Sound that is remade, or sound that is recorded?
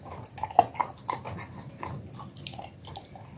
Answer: recorded